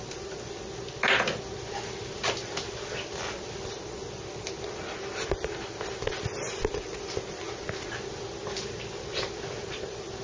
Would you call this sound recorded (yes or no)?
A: yes